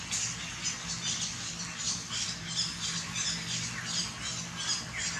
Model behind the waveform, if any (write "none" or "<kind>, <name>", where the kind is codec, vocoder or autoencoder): none